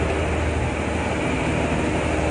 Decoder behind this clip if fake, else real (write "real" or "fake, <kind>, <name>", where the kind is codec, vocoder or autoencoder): real